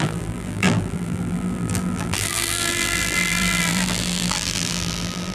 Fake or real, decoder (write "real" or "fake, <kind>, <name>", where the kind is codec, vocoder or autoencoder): fake, vocoder, BigVGAN v2